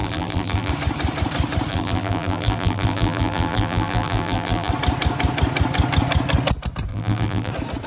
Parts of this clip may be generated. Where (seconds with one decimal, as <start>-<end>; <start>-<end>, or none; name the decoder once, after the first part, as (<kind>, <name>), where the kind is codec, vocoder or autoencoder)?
0.0-0.7 (vocoder, BigVGAN v2); 1.7-4.7; 6.9-7.5